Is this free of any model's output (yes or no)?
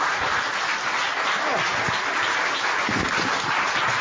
yes